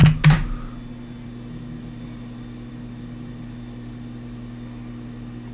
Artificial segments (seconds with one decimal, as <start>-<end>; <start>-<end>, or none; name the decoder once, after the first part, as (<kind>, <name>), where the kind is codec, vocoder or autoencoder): none